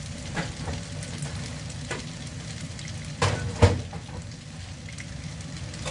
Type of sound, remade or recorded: recorded